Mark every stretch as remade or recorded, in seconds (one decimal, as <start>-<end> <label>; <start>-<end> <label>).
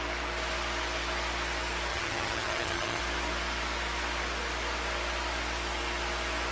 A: 0.0-1.9 recorded; 1.9-3.0 remade; 3.0-6.5 recorded